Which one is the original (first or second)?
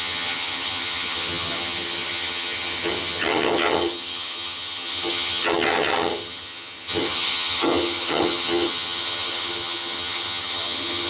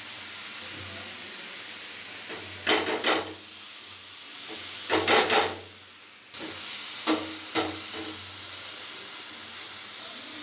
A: second